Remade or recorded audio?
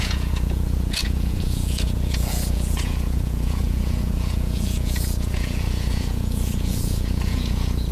remade